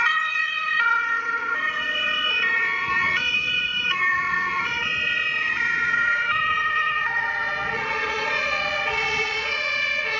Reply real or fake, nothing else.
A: fake